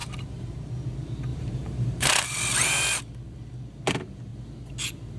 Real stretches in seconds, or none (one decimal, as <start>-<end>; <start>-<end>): 0.7-1.3; 2.1-5.2